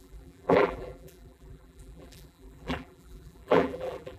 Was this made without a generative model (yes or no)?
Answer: no